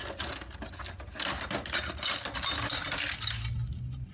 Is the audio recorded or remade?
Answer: recorded